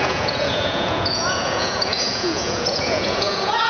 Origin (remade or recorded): remade